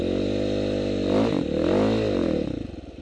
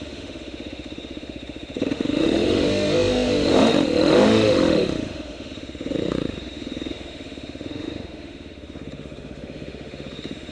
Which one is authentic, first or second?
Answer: first